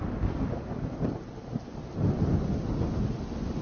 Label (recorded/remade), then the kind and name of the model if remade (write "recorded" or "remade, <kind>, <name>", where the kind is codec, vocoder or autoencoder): recorded